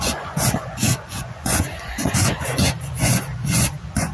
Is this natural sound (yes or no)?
no